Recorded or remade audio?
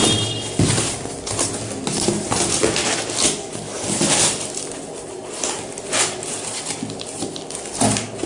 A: recorded